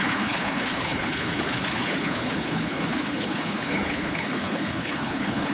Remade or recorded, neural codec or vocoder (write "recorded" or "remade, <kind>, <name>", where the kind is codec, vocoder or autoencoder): remade, codec, HILCodec